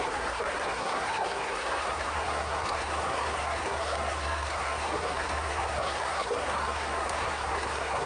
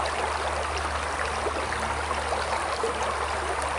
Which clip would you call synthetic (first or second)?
first